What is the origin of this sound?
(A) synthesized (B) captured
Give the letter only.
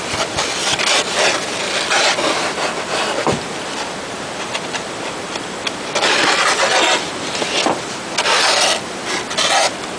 B